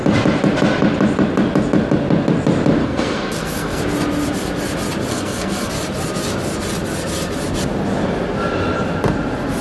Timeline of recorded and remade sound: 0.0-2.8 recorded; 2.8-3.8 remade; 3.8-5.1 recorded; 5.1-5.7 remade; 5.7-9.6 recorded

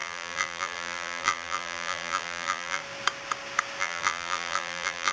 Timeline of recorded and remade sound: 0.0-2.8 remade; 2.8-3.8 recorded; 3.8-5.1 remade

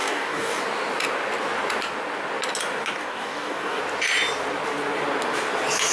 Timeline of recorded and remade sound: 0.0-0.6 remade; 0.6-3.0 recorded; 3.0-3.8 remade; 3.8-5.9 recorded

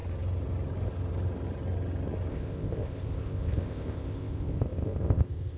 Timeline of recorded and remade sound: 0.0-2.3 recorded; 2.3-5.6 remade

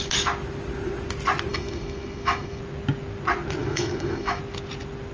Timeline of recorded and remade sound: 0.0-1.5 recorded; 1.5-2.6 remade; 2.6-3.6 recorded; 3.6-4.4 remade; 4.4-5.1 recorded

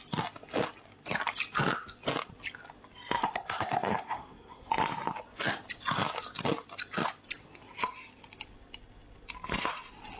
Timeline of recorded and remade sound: 0.0-3.2 recorded; 3.2-4.7 remade; 4.7-10.2 recorded

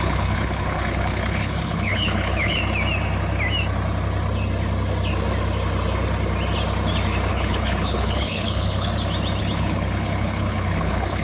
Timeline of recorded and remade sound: 0.0-2.6 remade; 2.6-7.3 recorded; 7.3-8.9 remade; 8.9-9.4 recorded; 9.4-11.2 remade

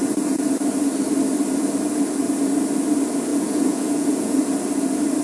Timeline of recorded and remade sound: 0.0-3.3 recorded; 3.3-4.4 remade; 4.4-5.2 recorded